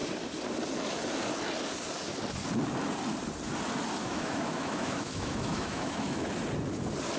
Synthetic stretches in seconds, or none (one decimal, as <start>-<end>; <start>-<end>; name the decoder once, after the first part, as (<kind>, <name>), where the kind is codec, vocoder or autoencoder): 4.0-6.3 (autoencoder, DAC-VAE)

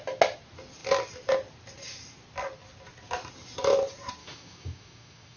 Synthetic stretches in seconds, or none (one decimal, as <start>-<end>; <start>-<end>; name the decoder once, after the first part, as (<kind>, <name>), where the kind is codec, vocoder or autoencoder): 4.2-5.4 (autoencoder, DAC-VAE)

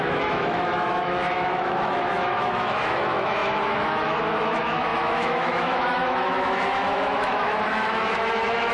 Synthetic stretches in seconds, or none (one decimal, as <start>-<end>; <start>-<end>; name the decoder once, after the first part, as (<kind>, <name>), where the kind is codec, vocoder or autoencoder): 0.0-8.7 (autoencoder, DAC-VAE)